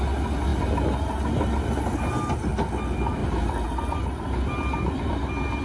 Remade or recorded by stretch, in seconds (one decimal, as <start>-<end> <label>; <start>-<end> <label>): 0.0-5.6 recorded